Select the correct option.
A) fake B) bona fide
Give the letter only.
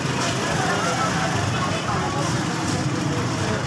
B